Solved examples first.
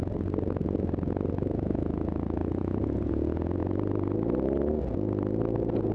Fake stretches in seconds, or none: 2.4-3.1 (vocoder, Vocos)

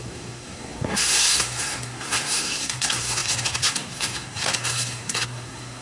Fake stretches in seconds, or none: 0.0-5.8 (codec, SNAC)